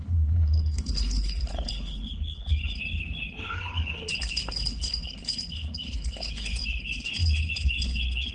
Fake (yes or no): yes